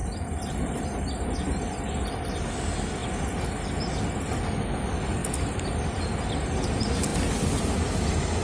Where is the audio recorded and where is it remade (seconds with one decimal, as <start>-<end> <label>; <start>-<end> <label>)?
0.0-2.4 remade; 2.4-5.2 recorded; 5.2-5.8 remade; 5.8-8.4 recorded